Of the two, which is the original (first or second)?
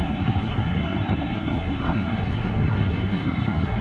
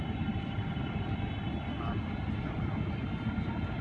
second